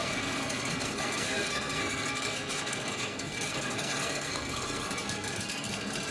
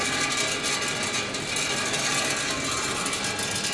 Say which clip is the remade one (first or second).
first